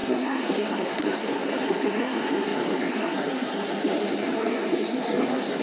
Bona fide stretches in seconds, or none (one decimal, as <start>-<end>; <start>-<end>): none